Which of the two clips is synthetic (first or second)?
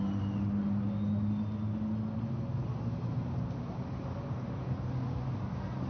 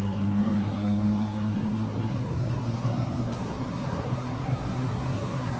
second